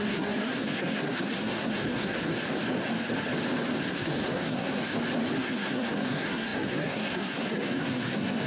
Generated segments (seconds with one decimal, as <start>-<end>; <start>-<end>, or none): 0.0-2.3; 3.9-4.8; 5.4-8.5